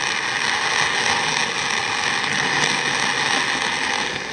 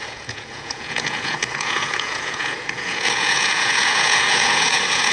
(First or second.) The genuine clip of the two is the first